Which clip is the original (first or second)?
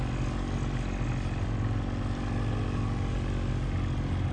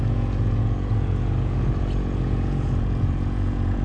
first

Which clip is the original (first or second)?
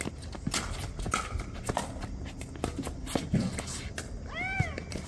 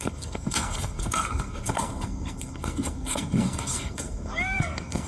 first